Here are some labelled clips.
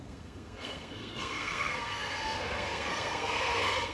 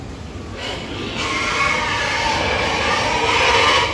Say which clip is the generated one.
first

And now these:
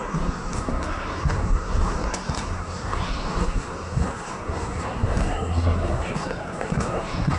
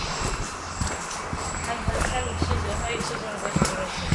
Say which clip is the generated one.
first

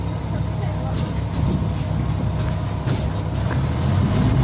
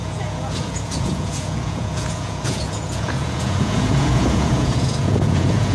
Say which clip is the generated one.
second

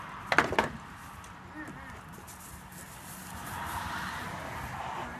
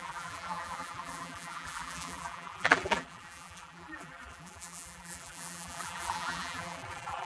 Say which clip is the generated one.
second